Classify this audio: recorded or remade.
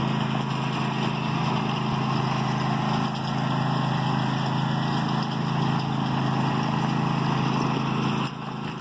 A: recorded